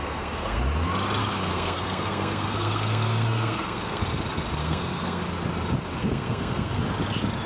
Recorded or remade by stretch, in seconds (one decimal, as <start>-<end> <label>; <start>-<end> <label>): 0.0-0.6 remade; 0.6-1.2 recorded; 1.2-4.0 remade; 4.0-4.6 recorded; 4.6-5.2 remade; 5.2-6.0 recorded; 6.0-6.8 remade; 6.8-7.5 recorded